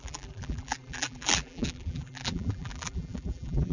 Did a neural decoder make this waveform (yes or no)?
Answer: yes